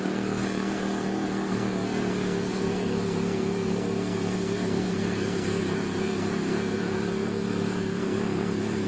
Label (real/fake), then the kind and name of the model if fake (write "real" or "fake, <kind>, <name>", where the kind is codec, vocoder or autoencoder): fake, codec, SNAC